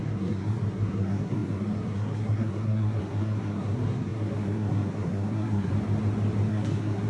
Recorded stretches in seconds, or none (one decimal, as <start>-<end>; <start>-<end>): 5.7-6.5